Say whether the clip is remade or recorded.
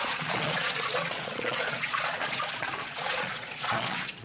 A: remade